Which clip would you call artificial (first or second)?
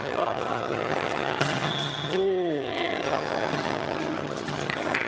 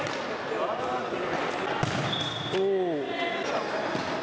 first